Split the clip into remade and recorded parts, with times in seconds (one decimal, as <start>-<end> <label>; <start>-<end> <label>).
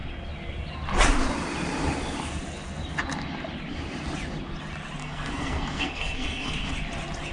0.0-5.0 recorded; 5.0-6.7 remade; 6.7-7.3 recorded